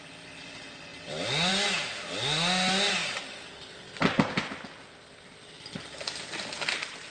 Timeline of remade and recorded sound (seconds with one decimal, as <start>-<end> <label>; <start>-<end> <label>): 0.0-7.1 recorded